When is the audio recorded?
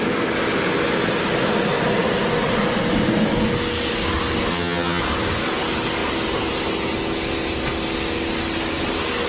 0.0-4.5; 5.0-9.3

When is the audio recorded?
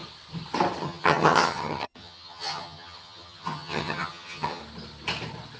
0.0-0.8; 4.6-5.6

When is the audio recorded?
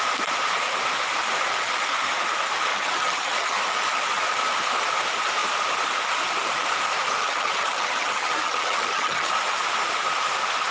0.0-2.7; 3.6-7.2; 9.3-10.7